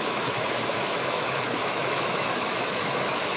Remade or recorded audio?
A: remade